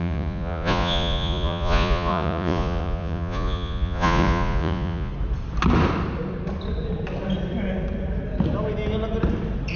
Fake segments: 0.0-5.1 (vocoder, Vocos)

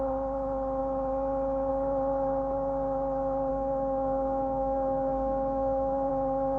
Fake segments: 3.5-6.1 (codec, SNAC)

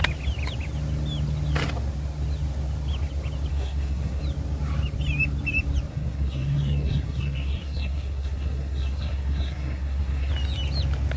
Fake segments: 3.5-4.2 (codec, SNAC); 5.9-10.3